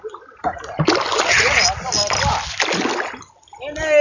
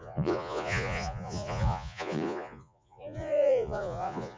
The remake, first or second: second